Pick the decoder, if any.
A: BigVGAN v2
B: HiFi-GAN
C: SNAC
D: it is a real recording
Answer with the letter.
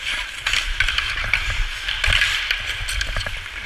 D